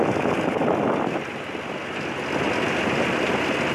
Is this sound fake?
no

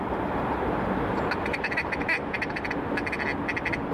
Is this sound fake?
no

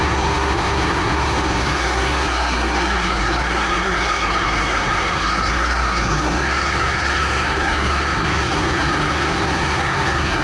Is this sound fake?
yes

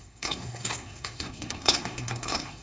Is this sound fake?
yes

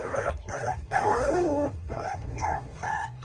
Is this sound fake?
yes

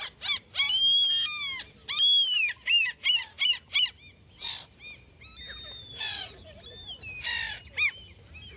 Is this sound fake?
no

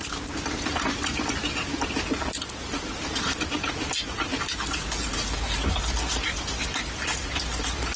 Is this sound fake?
no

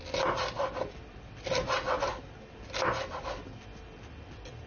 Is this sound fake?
no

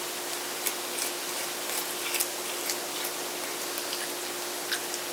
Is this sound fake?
no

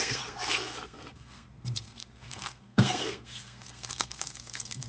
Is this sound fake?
yes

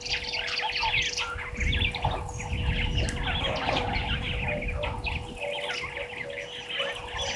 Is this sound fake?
no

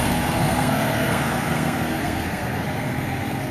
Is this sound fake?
yes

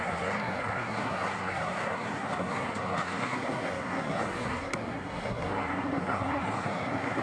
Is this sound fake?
yes